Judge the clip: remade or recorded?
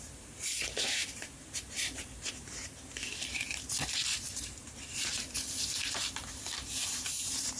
remade